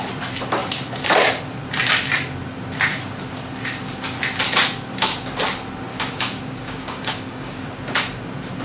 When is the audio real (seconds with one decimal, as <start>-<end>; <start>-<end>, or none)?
0.0-5.9; 7.6-8.6